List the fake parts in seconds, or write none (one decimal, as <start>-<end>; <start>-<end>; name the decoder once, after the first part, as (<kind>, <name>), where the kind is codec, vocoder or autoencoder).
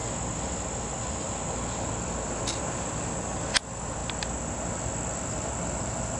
none